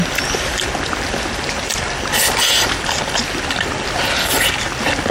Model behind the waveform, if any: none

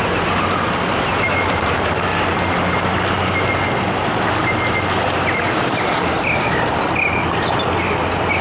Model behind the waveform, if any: none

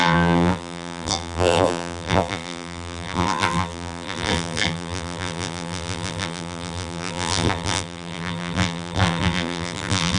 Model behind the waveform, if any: vocoder, BigVGAN v2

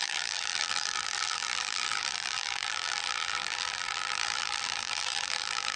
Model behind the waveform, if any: vocoder, BigVGAN v2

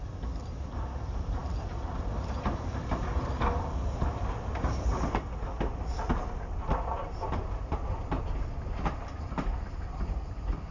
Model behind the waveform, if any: none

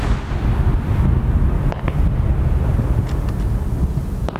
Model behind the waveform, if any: none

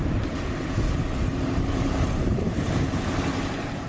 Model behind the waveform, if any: vocoder, BigVGAN v2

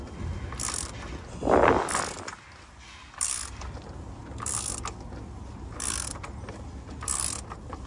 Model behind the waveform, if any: none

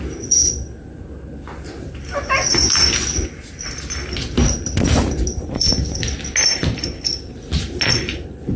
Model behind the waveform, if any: none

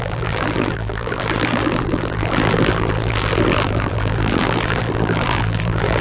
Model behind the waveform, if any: vocoder, BigVGAN v2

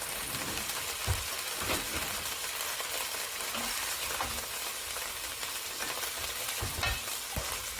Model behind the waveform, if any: vocoder, BigVGAN v2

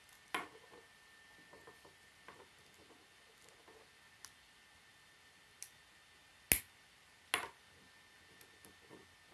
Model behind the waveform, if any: none